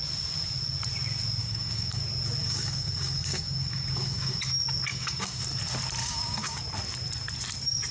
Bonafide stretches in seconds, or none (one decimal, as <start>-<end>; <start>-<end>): 0.0-1.4; 2.0-2.4; 4.4-4.9; 5.4-6.0; 6.6-7.9